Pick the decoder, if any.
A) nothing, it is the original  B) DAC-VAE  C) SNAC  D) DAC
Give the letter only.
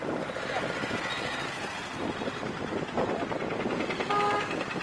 A